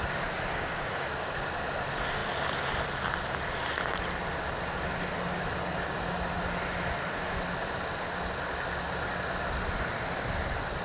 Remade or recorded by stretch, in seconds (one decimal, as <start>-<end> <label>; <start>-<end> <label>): 0.0-0.5 recorded; 0.5-1.3 remade; 1.3-10.8 recorded